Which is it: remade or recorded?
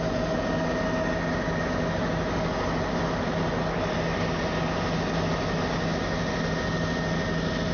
recorded